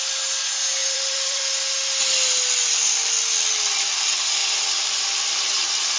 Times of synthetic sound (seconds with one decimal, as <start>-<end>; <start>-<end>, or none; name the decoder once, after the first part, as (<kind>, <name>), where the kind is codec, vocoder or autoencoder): 0.8-1.4 (vocoder, BigVGAN v2)